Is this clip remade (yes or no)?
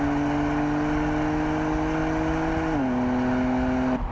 no